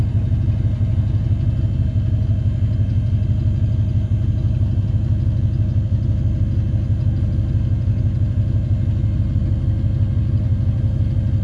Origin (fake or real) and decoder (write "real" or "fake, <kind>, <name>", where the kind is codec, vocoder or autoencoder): real